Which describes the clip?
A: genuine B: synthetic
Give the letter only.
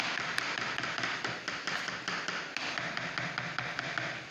A